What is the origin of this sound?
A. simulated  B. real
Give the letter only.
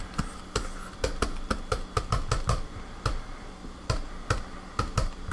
B